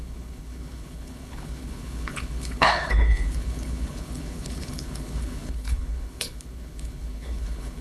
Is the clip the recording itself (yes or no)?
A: no